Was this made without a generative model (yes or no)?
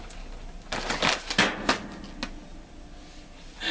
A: yes